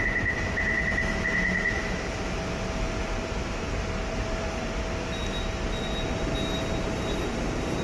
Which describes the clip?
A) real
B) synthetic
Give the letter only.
A